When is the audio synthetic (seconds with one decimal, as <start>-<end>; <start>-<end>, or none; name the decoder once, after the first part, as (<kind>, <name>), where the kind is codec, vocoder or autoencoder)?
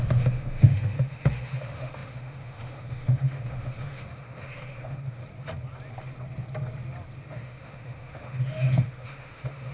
0.0-5.2 (autoencoder, DAC-VAE); 7.3-9.7